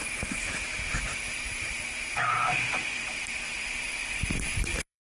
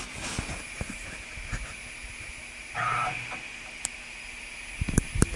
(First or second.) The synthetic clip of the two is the first